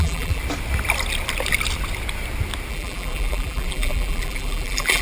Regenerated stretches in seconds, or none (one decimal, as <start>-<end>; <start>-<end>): 0.0-0.4; 2.7-5.0